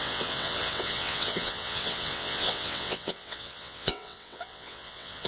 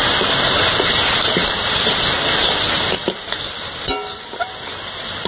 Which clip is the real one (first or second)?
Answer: second